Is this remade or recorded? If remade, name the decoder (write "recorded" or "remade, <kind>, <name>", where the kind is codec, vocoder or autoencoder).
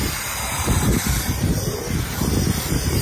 recorded